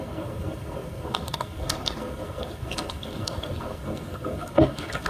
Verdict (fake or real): fake